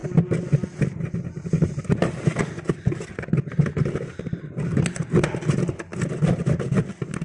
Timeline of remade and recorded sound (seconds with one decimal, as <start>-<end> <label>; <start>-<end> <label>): 0.0-7.2 recorded